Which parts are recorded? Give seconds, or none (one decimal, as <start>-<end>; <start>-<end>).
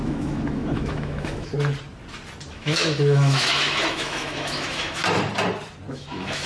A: 1.5-2.5; 5.0-5.9